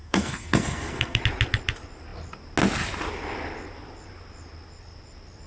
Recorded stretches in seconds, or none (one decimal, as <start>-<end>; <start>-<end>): 1.2-5.5